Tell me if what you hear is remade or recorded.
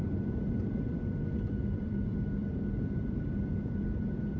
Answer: remade